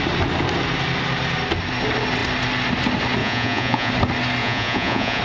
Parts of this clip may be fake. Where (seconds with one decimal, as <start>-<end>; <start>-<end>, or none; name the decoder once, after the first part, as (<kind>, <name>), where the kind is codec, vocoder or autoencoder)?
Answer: 3.2-3.9 (vocoder, Vocos); 4.4-5.2